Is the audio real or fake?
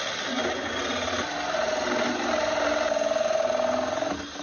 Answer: real